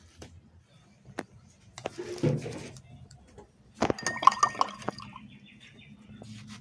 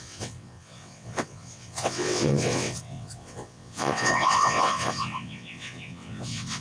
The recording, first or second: first